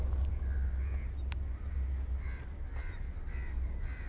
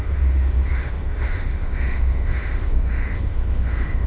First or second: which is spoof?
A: second